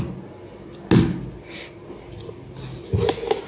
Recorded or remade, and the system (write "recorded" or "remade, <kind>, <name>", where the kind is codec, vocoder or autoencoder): recorded